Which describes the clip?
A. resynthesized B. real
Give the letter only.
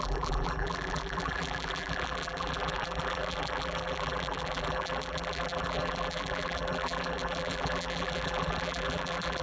A